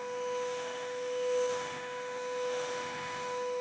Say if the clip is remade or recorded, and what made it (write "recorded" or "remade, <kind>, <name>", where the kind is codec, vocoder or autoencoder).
remade, autoencoder, DAC-VAE